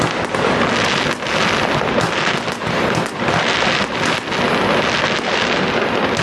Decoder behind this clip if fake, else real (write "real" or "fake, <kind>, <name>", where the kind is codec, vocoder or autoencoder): real